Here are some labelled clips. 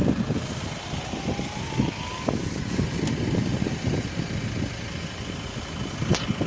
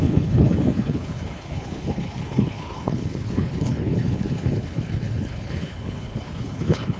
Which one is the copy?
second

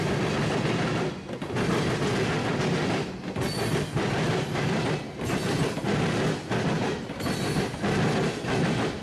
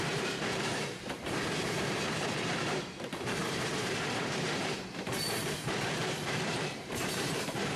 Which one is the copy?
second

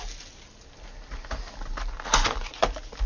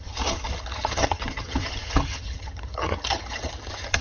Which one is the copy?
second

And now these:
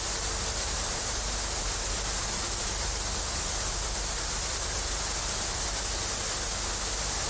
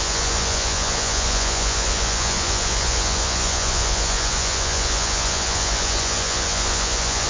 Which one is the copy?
second